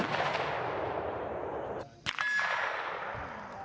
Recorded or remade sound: recorded